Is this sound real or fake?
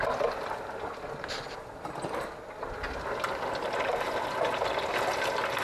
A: real